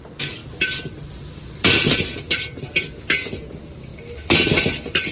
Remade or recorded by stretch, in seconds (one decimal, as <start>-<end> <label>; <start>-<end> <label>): 0.0-5.1 recorded